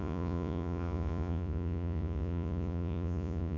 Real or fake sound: fake